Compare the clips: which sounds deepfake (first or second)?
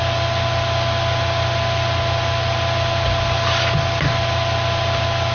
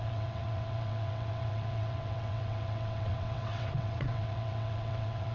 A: second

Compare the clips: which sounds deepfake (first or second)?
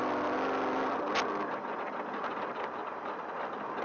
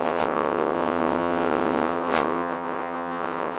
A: second